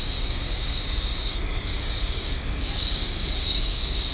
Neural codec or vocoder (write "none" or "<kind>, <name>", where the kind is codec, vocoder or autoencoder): codec, DAC